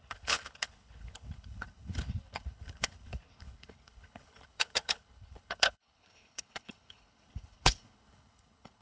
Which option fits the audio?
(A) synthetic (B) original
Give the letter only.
A